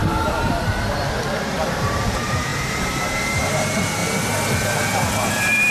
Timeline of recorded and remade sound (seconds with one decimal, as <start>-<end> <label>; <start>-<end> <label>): 0.0-4.0 remade; 4.0-5.3 recorded; 5.3-5.7 remade